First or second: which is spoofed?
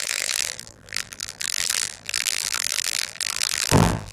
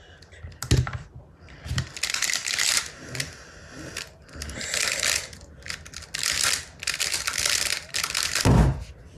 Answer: first